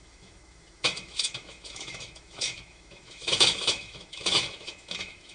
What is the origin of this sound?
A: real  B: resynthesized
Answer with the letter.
B